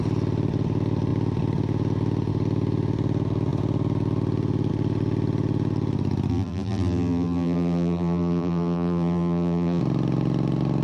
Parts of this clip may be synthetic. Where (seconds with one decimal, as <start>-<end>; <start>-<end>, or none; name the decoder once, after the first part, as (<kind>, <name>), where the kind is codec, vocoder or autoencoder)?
6.3-9.8 (vocoder, BigVGAN v2)